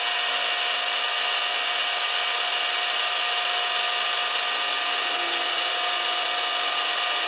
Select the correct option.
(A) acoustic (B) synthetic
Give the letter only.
A